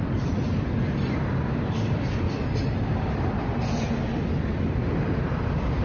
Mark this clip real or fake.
real